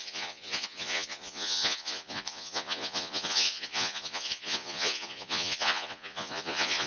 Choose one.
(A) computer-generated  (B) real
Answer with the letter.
A